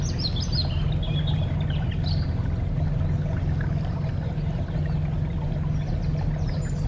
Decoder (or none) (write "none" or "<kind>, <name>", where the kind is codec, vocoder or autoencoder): none